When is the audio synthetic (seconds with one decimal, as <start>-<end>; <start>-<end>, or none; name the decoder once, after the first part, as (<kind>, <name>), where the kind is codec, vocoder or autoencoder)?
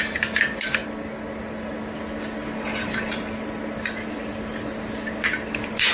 none